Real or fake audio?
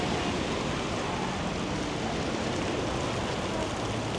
real